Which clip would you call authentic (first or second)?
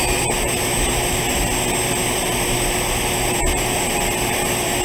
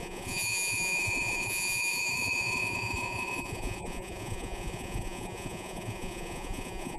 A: first